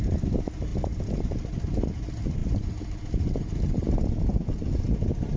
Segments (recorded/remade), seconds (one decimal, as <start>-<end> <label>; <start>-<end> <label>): 0.0-5.4 recorded